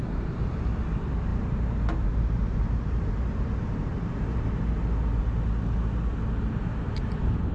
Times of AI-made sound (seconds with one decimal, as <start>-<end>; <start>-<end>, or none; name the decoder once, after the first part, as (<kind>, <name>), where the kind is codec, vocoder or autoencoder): 0.0-3.9 (vocoder, BigVGAN v2); 6.6-7.5